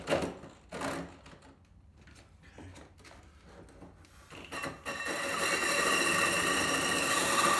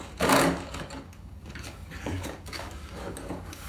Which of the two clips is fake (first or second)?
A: second